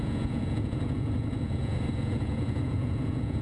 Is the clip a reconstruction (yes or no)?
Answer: yes